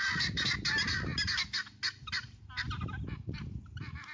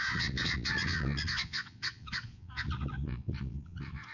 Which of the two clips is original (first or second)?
first